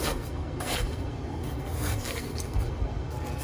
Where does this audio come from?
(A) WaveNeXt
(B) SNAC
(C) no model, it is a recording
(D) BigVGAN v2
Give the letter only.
B